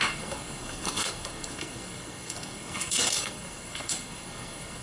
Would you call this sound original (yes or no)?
no